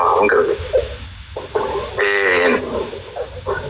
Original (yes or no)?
yes